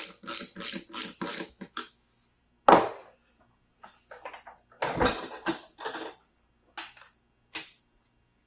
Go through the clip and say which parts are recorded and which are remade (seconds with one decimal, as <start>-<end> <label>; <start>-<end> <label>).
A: 0.0-1.3 recorded; 1.3-2.4 remade; 2.4-8.5 recorded